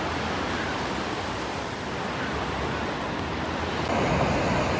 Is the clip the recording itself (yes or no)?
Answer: yes